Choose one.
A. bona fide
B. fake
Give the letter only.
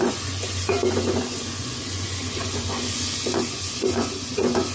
B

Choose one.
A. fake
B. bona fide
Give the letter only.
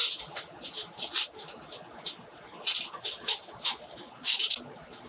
B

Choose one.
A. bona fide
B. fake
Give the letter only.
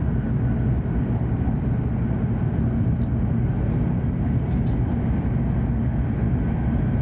A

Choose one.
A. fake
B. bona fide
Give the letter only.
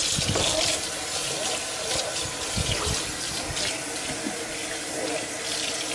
B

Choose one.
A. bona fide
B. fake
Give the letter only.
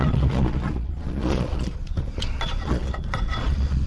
B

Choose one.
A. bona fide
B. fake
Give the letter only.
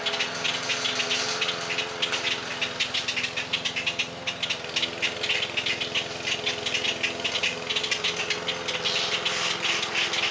A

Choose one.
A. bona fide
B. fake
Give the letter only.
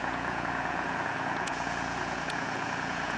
B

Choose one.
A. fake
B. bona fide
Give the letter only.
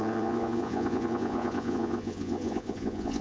A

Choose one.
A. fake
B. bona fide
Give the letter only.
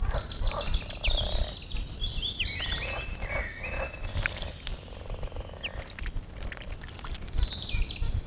B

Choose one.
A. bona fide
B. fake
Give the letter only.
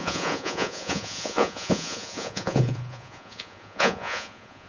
B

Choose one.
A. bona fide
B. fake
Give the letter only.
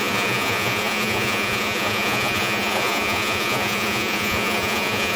B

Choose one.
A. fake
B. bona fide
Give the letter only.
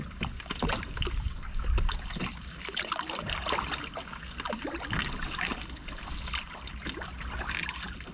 B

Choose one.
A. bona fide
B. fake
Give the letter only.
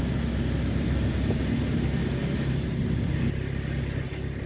A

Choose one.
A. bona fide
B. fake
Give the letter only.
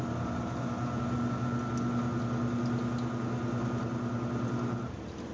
A